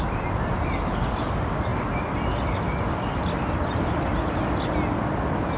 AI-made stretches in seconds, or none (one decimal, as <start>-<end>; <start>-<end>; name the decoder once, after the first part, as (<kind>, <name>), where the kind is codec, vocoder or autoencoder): none